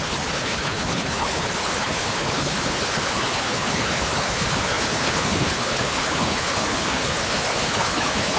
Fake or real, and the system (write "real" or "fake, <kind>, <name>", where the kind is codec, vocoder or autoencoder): fake, codec, HILCodec